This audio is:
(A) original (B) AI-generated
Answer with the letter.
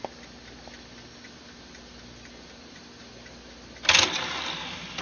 A